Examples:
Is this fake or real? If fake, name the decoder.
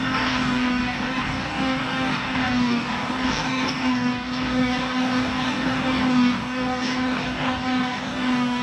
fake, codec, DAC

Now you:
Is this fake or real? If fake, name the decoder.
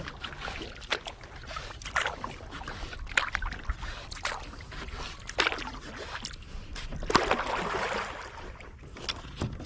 real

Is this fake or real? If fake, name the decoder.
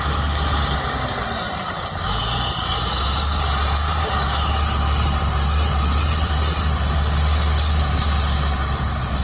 real